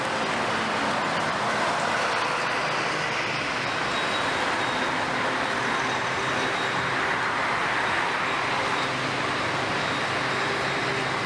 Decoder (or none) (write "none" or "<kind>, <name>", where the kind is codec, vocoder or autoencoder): none